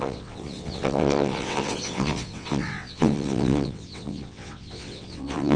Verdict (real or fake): fake